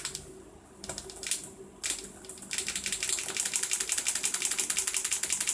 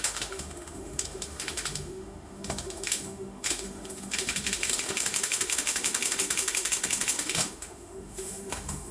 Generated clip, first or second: second